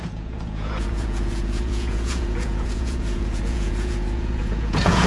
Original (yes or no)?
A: no